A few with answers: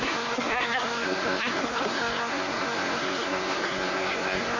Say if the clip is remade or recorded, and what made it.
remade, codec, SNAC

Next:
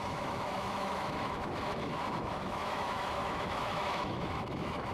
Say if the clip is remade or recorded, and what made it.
remade, autoencoder, DAC-VAE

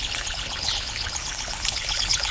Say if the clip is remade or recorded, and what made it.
remade, codec, HILCodec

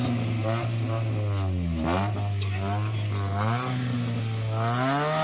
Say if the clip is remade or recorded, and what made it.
recorded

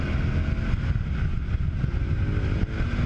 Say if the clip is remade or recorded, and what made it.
recorded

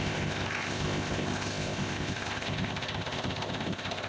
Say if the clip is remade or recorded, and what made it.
remade, codec, ZipCodec